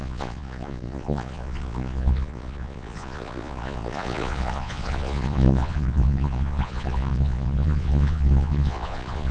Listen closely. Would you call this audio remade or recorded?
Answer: remade